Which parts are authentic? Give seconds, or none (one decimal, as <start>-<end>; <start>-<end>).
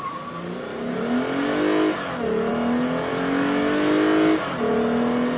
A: 0.0-5.4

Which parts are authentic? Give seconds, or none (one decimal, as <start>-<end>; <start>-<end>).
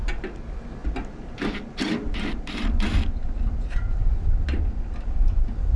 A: 0.0-5.8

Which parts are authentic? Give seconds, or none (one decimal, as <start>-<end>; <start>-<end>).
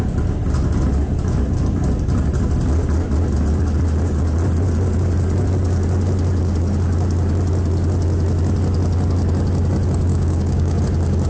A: 0.0-10.1; 10.8-11.3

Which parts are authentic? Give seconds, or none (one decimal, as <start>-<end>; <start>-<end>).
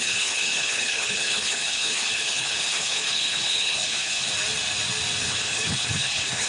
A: 4.3-5.2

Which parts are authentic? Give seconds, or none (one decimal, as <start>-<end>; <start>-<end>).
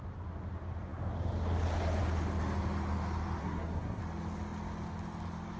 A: 0.0-3.4; 4.0-5.6